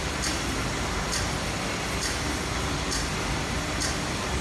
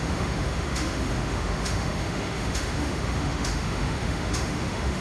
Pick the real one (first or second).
first